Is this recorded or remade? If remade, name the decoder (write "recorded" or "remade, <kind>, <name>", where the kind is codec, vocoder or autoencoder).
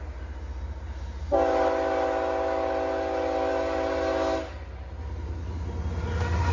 recorded